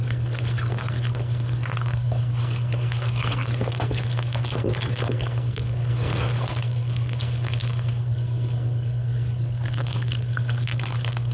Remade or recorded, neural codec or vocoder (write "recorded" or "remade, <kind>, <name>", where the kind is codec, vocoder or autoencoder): remade, codec, SNAC